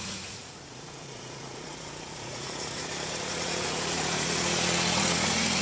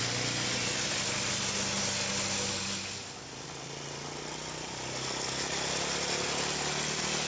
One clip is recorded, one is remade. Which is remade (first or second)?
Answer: first